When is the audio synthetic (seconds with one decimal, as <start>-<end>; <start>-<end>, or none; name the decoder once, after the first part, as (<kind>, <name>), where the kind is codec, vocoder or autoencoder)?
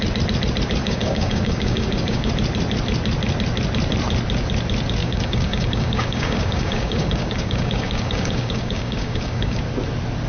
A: 0.8-2.3 (codec, DAC); 5.0-9.6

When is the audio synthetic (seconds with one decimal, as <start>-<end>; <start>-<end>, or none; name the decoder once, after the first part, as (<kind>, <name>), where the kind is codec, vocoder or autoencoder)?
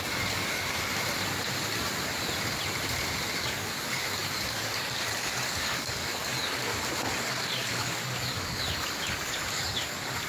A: 0.0-0.9 (codec, DAC); 3.4-6.7; 7.2-10.3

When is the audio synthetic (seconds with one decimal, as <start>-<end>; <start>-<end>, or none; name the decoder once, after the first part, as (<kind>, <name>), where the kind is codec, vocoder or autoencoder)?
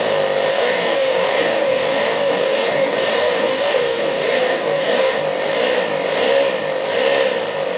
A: 0.5-5.2 (codec, DAC)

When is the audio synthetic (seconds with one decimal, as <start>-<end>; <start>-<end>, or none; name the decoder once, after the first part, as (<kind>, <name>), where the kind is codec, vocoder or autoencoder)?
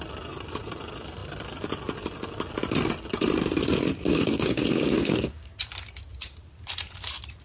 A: 4.1-5.5 (codec, DAC)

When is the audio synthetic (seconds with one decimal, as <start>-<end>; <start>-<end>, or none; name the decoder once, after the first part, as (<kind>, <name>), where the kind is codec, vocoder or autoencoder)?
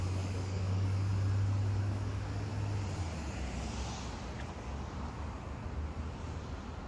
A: 0.0-1.1 (codec, DAC); 1.8-2.5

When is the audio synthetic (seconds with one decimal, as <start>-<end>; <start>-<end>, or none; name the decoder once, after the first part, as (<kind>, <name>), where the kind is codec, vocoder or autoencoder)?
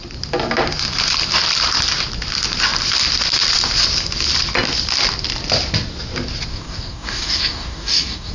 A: 6.5-8.3 (codec, DAC)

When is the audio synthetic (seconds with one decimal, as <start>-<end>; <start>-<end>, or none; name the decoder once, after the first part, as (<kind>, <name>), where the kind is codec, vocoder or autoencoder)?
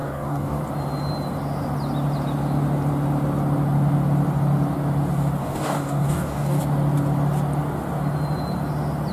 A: 0.0-0.6 (codec, DAC); 5.4-6.6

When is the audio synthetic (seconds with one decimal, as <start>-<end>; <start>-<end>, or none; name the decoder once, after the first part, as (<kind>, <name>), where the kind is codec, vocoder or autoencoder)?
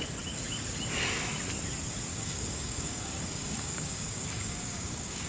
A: 2.1-5.3 (codec, DAC)